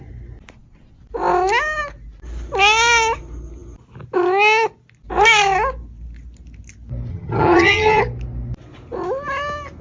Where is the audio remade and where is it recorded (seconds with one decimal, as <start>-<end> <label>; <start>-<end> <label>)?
0.0-7.1 recorded; 7.1-8.0 remade; 8.0-9.8 recorded